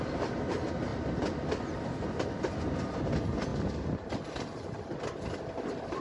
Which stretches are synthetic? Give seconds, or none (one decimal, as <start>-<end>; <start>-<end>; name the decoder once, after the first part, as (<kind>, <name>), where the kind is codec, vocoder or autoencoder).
0.9-2.4 (vocoder, BigVGAN v2)